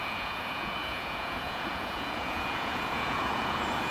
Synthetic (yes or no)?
yes